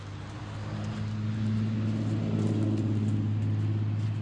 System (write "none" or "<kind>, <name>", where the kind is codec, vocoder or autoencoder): none